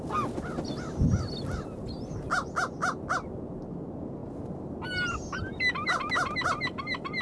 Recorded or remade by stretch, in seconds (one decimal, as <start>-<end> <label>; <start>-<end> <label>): 0.0-7.2 recorded